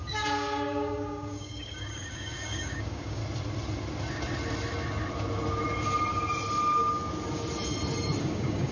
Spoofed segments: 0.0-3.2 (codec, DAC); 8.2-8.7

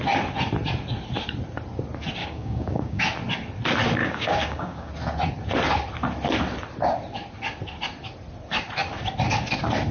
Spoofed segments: 2.2-3.0 (codec, DAC); 4.0-4.9

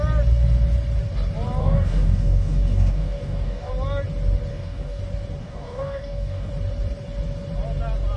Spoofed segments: 1.6-3.7 (codec, DAC); 4.5-5.0; 5.4-6.5

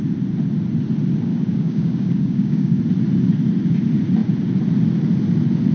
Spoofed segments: 1.3-2.8 (codec, DAC)

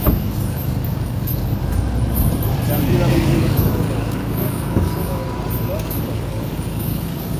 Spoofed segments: 0.0-1.5 (codec, DAC); 3.1-5.2; 5.8-7.4

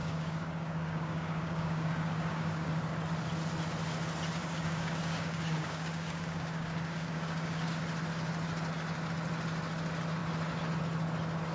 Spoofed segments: 0.0-2.7 (codec, DAC); 4.4-7.8

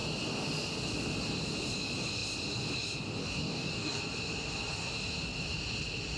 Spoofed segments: 3.2-4.0 (codec, DAC)

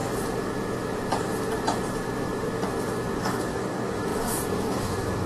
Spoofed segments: 3.2-5.3 (codec, DAC)